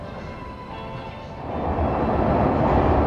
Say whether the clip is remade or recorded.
recorded